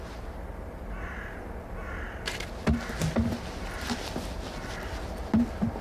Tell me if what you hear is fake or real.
real